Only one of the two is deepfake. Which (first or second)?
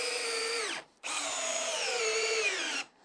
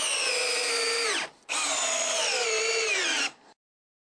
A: first